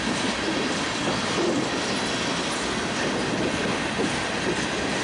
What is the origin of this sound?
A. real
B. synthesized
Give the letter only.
A